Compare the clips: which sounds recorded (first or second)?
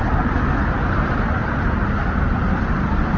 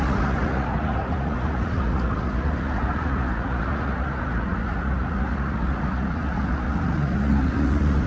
first